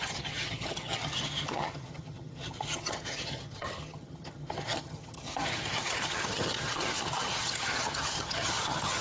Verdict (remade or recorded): remade